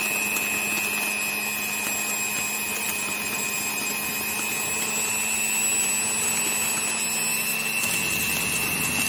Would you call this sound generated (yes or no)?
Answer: no